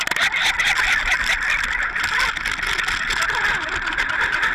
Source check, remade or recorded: recorded